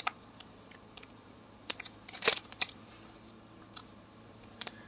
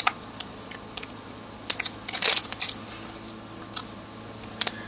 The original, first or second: second